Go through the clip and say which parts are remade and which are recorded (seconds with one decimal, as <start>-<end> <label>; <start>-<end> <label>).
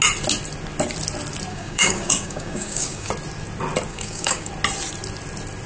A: 0.0-1.5 recorded; 1.5-3.1 remade; 3.1-3.9 recorded; 3.9-4.5 remade; 4.5-5.7 recorded